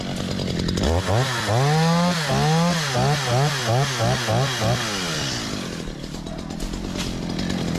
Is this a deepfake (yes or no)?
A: no